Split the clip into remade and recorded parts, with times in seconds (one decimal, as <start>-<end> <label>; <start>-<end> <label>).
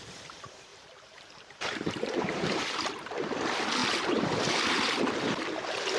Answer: 0.0-0.7 recorded; 0.7-2.7 remade; 2.7-6.0 recorded